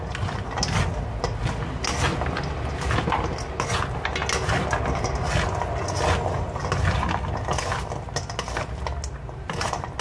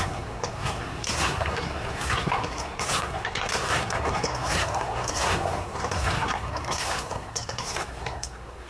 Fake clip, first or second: second